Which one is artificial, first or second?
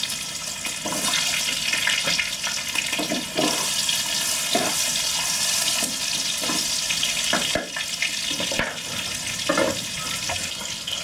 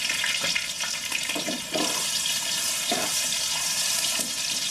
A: second